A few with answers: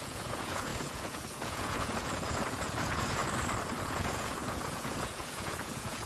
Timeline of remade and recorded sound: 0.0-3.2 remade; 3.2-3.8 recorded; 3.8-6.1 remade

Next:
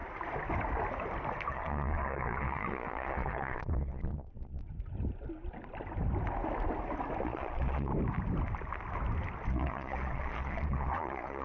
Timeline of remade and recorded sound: 0.0-1.5 recorded; 1.5-4.6 remade; 4.6-7.2 recorded; 7.2-7.9 remade; 7.9-9.5 recorded; 9.5-11.4 remade

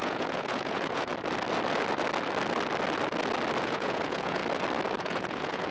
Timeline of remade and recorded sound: 0.0-1.1 remade; 1.1-3.6 recorded; 3.6-4.4 remade; 4.4-5.0 recorded; 5.0-5.7 remade

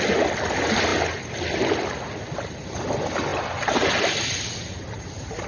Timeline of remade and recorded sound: 0.0-5.5 recorded